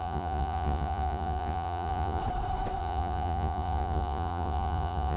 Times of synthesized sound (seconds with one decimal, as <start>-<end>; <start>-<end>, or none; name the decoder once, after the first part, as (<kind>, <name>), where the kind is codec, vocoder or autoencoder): 0.0-2.2 (vocoder, Vocos); 2.8-5.2